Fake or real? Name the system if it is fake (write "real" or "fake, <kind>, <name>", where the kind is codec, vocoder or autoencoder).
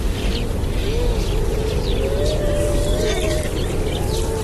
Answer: real